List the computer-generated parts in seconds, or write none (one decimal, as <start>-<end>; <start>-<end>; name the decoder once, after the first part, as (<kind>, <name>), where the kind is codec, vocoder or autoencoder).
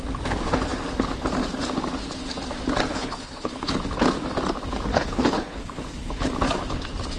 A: 2.9-3.7 (codec, HILCodec); 4.9-6.3